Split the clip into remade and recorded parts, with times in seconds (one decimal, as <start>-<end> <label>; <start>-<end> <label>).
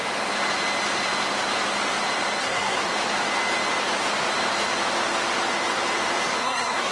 0.0-2.4 recorded; 2.4-2.9 remade; 2.9-6.4 recorded; 6.4-6.9 remade